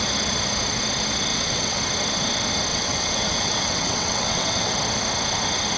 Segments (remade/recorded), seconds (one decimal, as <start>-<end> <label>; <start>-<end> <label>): 0.0-1.3 recorded; 1.3-1.8 remade; 1.8-2.7 recorded; 2.7-4.7 remade; 4.7-5.8 recorded